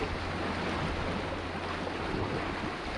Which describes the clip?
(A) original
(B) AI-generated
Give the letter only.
A